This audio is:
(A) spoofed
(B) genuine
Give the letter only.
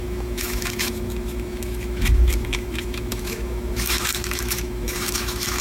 A